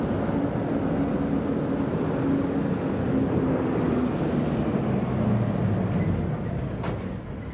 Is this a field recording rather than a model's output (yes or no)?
yes